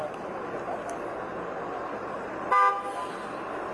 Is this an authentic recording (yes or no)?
yes